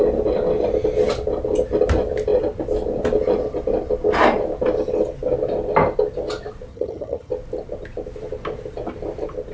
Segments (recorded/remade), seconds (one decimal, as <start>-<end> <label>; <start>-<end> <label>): 0.0-6.7 recorded; 6.7-7.3 remade; 7.3-9.5 recorded